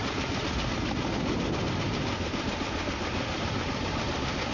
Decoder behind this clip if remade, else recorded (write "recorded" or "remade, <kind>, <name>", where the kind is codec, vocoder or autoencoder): recorded